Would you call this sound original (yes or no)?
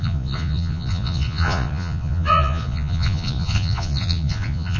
no